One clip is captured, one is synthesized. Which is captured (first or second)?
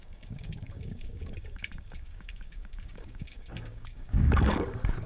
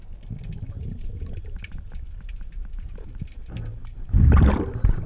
second